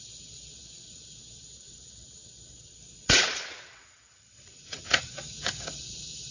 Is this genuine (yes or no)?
no